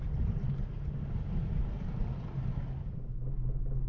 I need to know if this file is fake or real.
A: real